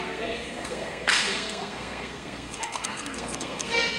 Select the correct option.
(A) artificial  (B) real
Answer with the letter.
A